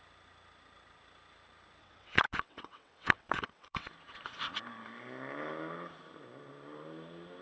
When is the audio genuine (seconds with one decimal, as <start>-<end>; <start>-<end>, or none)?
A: 0.0-1.8; 3.9-7.4